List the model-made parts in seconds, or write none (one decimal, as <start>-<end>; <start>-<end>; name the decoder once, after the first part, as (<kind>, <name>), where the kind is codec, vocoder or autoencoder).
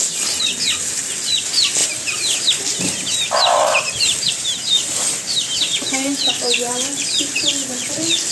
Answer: 1.8-6.3 (vocoder, BigVGAN v2)